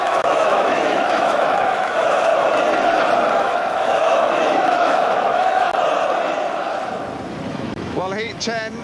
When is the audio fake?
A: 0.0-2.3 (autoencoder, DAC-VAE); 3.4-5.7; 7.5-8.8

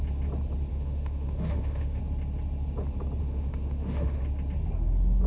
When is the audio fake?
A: 0.7-2.0 (autoencoder, DAC-VAE); 3.2-4.2

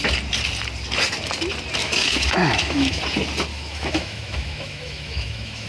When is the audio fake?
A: 1.8-3.0 (autoencoder, DAC-VAE); 3.5-5.7

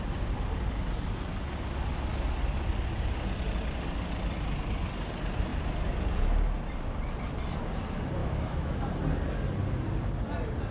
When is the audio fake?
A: 8.2-8.8 (autoencoder, DAC-VAE)

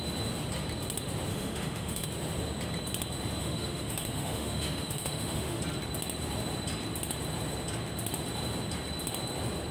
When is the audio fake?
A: 1.3-2.1 (autoencoder, DAC-VAE); 3.4-5.6

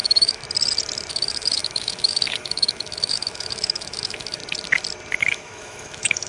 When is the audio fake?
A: 0.0-0.4 (autoencoder, DAC-VAE); 1.1-4.4; 5.2-6.3

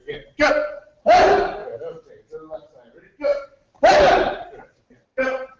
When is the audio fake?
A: 1.6-2.1 (autoencoder, DAC-VAE)